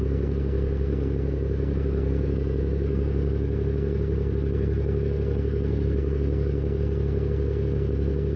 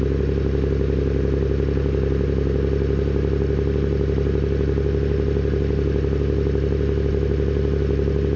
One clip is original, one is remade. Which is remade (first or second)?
first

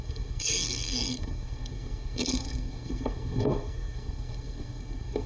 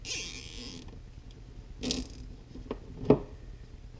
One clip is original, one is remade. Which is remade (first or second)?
first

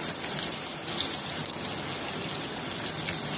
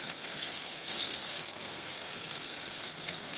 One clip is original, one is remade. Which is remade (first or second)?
second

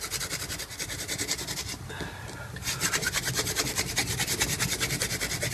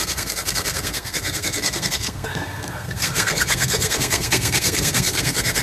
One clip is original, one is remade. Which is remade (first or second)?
second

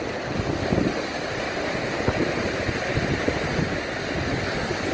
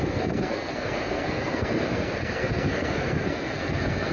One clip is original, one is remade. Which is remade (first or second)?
second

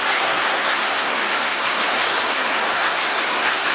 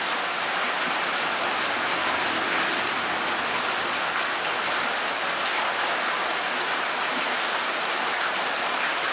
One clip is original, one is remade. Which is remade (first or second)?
first